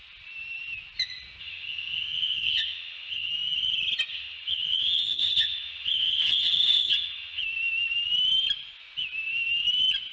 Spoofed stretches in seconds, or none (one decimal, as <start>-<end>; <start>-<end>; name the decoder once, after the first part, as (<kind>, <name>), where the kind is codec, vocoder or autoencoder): 1.4-3.3 (vocoder, HiFi-GAN); 4.1-7.4